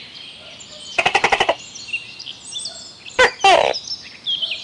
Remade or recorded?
recorded